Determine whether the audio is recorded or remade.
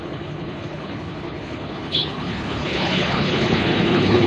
remade